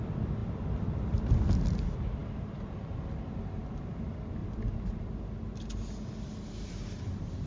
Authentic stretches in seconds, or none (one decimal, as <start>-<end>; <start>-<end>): 0.0-7.5